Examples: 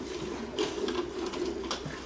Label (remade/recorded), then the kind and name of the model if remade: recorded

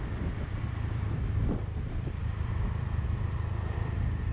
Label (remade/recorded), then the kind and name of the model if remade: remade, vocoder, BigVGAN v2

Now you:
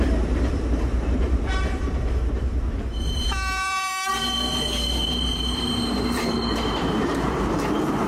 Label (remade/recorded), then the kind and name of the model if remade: remade, vocoder, BigVGAN v2